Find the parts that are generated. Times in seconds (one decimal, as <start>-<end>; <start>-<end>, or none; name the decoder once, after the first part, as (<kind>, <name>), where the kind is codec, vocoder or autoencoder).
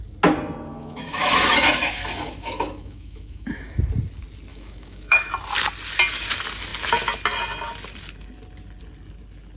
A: 0.7-3.8 (autoencoder, DAC-VAE); 4.5-5.3